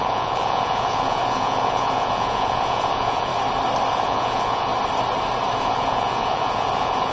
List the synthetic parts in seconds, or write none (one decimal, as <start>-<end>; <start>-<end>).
0.0-3.3; 3.9-4.7; 5.6-7.1